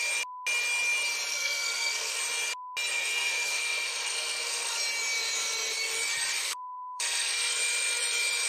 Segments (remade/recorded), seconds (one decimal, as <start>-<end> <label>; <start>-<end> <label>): 0.0-1.3 recorded; 1.3-2.2 remade; 2.2-2.9 recorded; 2.9-4.8 remade; 4.8-6.4 recorded; 6.4-7.5 remade; 7.5-8.5 recorded